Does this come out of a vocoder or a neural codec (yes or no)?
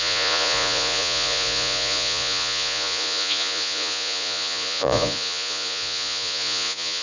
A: yes